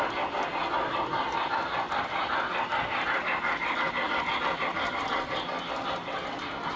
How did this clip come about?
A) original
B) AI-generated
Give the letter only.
A